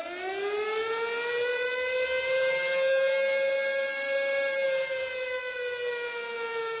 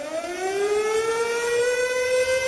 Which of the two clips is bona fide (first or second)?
first